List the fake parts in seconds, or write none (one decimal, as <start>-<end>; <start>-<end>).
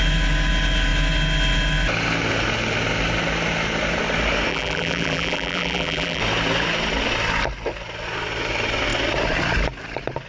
4.5-6.2